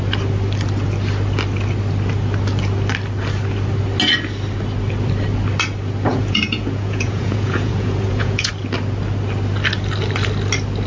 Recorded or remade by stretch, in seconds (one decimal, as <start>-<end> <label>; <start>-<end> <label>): 0.0-6.1 recorded; 6.1-8.5 remade; 8.5-10.9 recorded